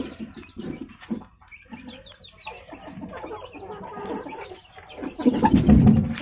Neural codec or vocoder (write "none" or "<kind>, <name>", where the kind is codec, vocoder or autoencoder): none